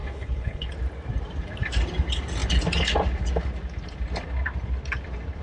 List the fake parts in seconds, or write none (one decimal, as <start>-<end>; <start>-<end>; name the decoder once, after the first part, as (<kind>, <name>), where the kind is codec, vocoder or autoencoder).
0.0-0.7 (codec, HILCodec)